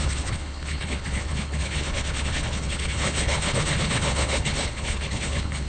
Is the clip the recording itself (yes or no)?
no